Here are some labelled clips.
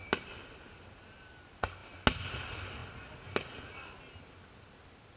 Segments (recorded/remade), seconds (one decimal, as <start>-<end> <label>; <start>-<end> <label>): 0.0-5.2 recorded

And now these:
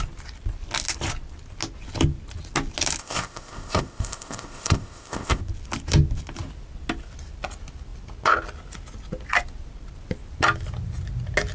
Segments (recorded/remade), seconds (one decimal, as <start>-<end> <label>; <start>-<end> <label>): 0.0-3.0 recorded; 3.0-5.4 remade; 5.4-11.5 recorded

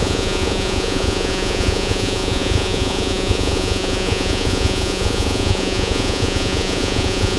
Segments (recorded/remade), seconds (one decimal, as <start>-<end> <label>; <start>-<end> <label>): 0.0-7.4 remade

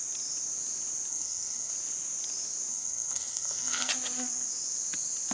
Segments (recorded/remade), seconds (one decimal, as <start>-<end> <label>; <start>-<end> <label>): 0.0-1.1 recorded; 1.1-1.7 remade; 1.7-2.7 recorded; 2.7-3.9 remade; 3.9-5.3 recorded

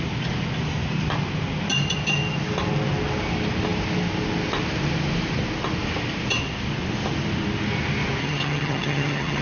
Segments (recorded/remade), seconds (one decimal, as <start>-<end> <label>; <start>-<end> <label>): 0.0-8.2 recorded; 8.2-9.4 remade

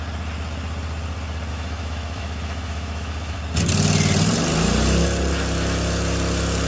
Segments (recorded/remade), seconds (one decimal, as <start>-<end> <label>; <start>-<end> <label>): 0.0-1.5 recorded; 1.5-3.4 remade; 3.4-6.7 recorded

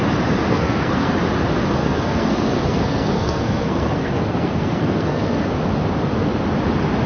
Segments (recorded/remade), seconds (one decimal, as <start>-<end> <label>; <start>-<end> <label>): 0.0-0.5 recorded; 0.5-1.1 remade; 1.1-1.8 recorded; 1.8-5.5 remade; 5.5-7.1 recorded